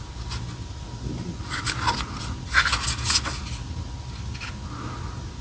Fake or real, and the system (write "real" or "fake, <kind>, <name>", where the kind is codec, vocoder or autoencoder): real